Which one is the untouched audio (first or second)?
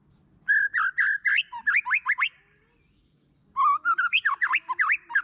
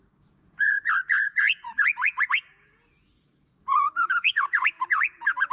first